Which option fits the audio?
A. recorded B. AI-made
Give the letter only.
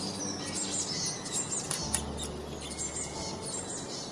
A